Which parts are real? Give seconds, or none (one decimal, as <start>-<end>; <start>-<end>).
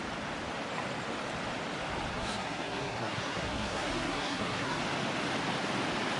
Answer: 0.0-2.1; 4.8-6.2